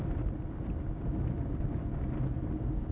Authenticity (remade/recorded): recorded